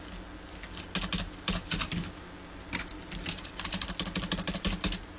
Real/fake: real